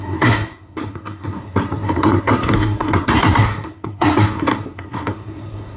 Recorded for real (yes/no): no